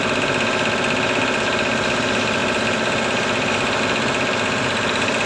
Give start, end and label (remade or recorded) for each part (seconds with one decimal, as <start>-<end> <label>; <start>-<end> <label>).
0.0-5.3 recorded